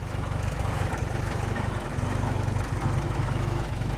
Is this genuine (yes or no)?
no